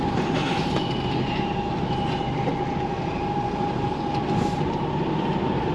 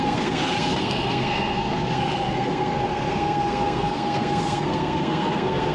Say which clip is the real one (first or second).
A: first